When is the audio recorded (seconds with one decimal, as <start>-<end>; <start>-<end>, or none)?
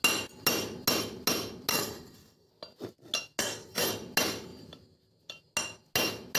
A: 0.0-1.7; 2.5-3.4; 3.9-6.4